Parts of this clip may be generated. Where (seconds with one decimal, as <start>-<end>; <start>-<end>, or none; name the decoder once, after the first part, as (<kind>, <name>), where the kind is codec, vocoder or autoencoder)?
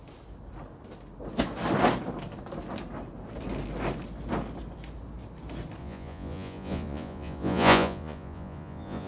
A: 5.8-9.1 (vocoder, Vocos)